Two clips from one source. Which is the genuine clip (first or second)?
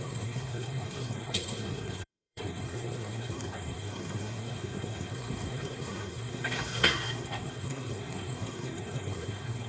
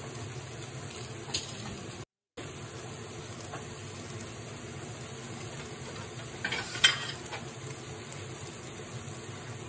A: second